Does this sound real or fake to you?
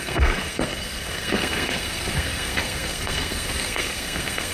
fake